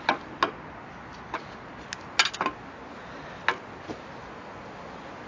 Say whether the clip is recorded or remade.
recorded